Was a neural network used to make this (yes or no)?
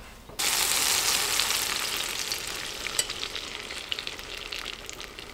no